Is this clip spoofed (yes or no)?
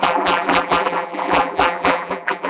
yes